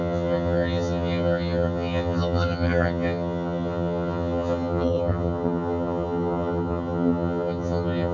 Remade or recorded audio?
remade